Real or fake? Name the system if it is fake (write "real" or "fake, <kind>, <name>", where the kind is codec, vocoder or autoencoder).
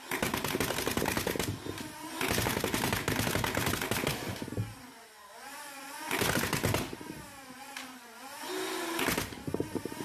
real